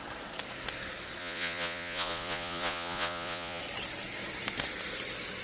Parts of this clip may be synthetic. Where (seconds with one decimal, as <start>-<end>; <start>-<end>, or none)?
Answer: 1.2-3.6